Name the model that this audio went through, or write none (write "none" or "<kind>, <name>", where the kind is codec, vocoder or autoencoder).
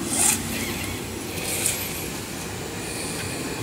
none